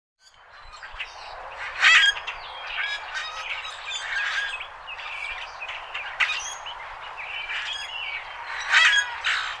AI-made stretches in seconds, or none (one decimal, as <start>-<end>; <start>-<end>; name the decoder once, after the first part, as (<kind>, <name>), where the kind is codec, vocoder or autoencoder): 0.0-9.6 (vocoder, BigVGAN v2)